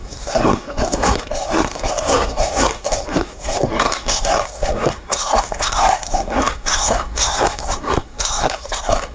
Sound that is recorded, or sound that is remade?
remade